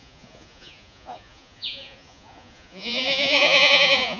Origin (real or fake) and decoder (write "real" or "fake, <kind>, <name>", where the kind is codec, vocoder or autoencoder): fake, vocoder, Vocos